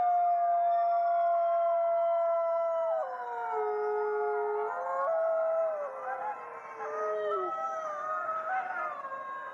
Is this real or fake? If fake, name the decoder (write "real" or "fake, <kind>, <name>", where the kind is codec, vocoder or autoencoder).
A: real